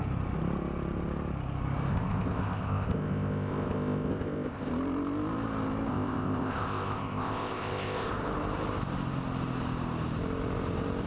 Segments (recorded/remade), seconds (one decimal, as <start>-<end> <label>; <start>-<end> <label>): 0.0-1.9 recorded; 1.9-4.7 remade; 4.7-5.9 recorded; 5.9-8.1 remade; 8.1-11.1 recorded